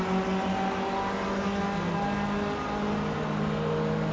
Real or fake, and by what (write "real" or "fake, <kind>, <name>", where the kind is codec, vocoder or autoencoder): real